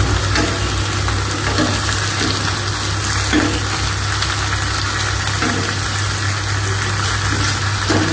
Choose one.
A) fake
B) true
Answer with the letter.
B